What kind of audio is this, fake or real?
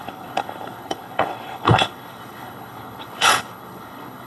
fake